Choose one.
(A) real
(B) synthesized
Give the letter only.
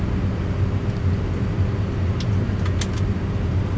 A